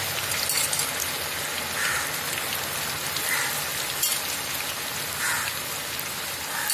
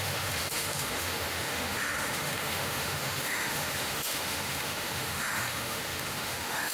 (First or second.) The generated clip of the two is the second